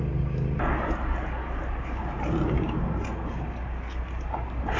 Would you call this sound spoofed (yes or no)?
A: no